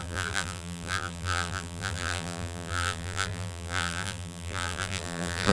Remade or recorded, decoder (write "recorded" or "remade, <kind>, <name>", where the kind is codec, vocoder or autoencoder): remade, vocoder, BigVGAN v2